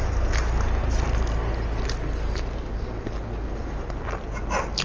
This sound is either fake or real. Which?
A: real